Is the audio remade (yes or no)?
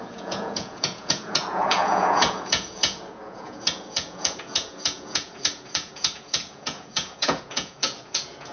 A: yes